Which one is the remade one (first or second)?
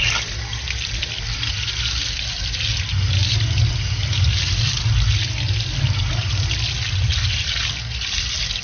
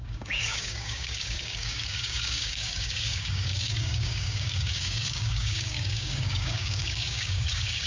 second